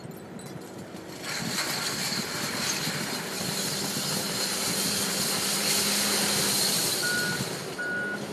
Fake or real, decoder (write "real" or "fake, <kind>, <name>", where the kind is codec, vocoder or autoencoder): real